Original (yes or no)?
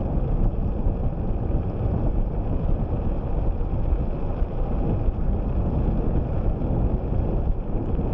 yes